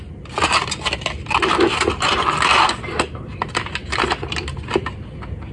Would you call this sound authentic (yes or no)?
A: yes